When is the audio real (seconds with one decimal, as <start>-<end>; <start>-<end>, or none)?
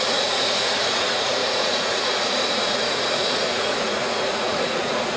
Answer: none